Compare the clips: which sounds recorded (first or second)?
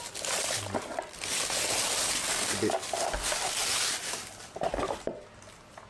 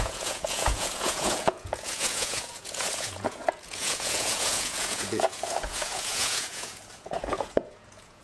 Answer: first